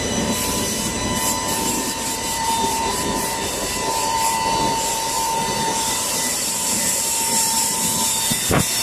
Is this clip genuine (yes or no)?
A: no